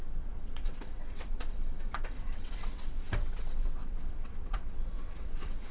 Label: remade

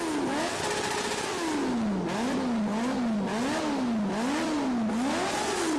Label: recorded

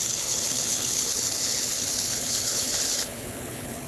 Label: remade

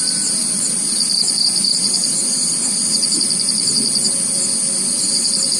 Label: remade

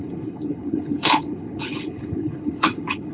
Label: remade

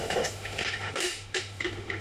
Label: remade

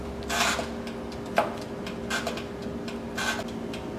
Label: recorded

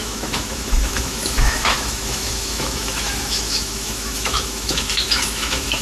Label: remade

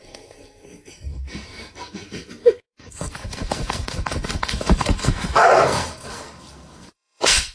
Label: remade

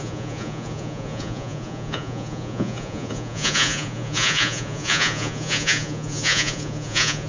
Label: remade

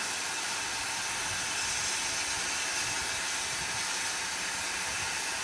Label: recorded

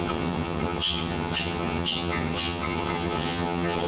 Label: remade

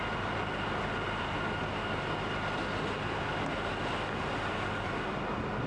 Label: recorded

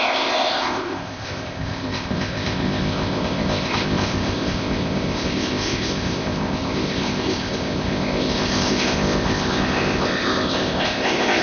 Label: remade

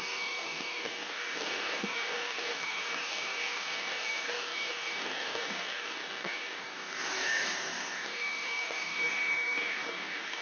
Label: remade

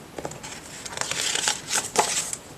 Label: recorded